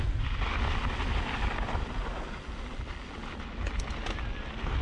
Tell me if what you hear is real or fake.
real